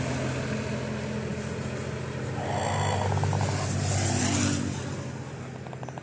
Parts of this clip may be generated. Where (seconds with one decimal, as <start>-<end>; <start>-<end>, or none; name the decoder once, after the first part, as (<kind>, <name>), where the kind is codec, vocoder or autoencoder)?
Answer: none